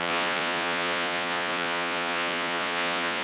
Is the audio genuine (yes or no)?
no